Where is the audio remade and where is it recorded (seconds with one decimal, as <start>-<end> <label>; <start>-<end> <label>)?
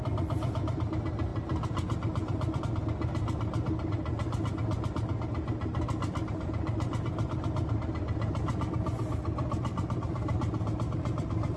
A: 0.0-11.6 recorded